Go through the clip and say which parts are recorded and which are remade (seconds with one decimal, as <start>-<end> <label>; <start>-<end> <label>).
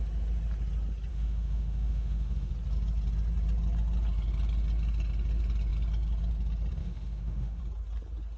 0.0-1.1 recorded; 1.1-2.5 remade; 2.5-6.8 recorded; 6.8-7.6 remade; 7.6-8.4 recorded